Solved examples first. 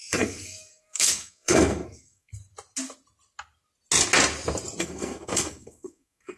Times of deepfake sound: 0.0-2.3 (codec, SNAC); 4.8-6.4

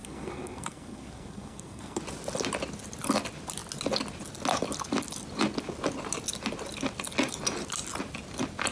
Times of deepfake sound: 0.0-2.0 (codec, SNAC)

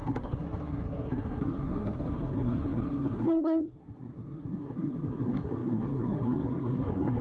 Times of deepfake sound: 0.0-7.2 (codec, SNAC)

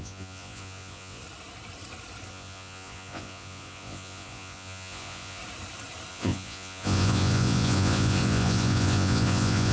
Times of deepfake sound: 0.0-1.2 (vocoder, Vocos); 2.3-5.4; 6.1-9.7

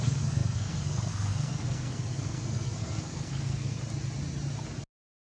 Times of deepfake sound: 0.0-3.8 (codec, SNAC)

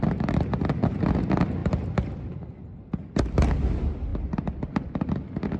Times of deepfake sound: 1.6-2.3 (vocoder, BigVGAN v2)